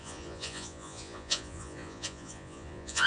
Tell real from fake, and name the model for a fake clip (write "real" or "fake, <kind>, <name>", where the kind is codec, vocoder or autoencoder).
fake, vocoder, Vocos